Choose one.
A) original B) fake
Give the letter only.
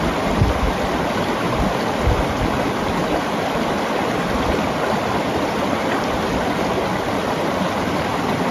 A